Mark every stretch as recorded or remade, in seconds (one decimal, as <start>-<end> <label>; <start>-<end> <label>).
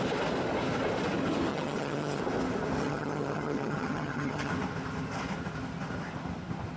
0.0-1.5 recorded; 1.5-2.2 remade; 2.2-2.8 recorded; 2.8-4.5 remade; 4.5-6.8 recorded